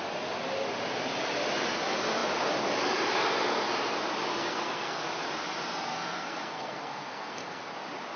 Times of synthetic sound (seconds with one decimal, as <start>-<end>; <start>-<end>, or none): 4.4-5.0; 5.9-7.7